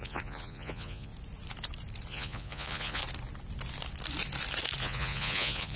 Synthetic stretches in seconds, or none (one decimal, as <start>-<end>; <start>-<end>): 0.0-1.1; 2.1-3.0; 4.8-5.8